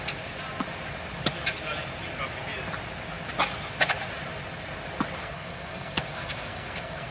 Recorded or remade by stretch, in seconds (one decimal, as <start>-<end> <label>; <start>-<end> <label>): 0.0-5.2 recorded; 5.2-7.1 remade